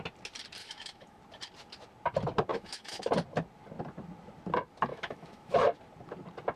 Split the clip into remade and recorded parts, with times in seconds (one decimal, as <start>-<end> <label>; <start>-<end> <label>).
0.0-0.6 recorded; 0.6-1.2 remade; 1.2-2.5 recorded; 2.5-3.1 remade; 3.1-4.9 recorded; 4.9-5.6 remade; 5.6-6.6 recorded